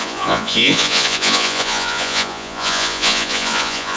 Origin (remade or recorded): remade